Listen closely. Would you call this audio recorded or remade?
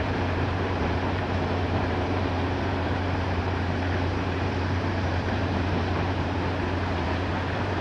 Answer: remade